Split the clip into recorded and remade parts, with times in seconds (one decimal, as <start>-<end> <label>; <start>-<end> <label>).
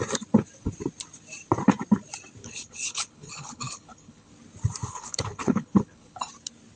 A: 0.0-2.4 recorded; 2.4-4.3 remade; 4.3-4.8 recorded; 4.8-6.2 remade; 6.2-6.8 recorded